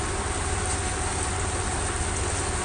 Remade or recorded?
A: recorded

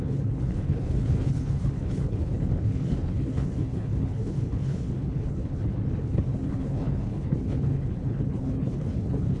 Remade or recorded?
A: remade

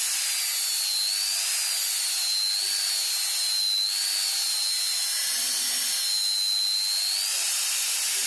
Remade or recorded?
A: recorded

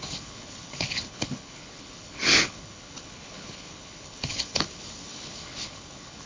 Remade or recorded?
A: remade